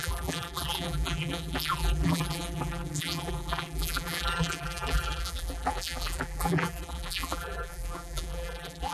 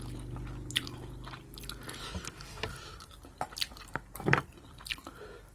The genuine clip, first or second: second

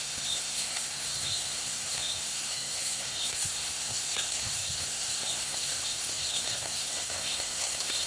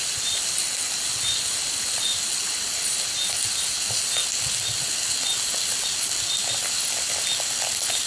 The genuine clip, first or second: second